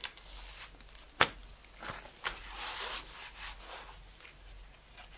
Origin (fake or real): real